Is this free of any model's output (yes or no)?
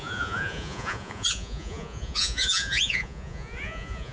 no